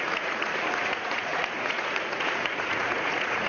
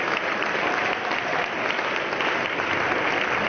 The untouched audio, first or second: second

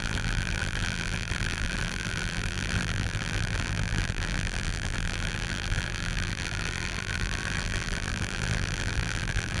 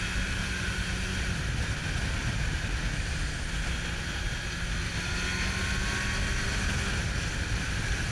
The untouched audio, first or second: second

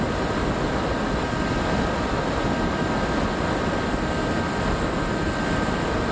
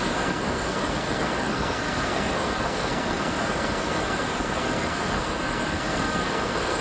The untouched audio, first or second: first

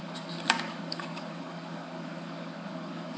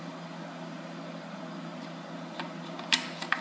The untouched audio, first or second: second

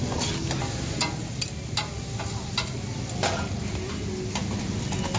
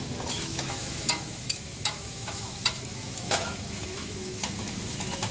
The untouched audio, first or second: first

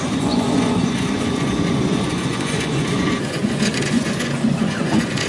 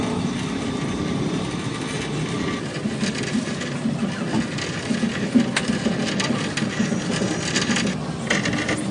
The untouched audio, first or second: second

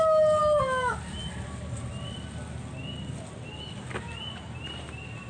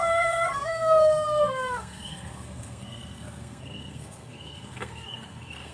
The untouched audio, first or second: first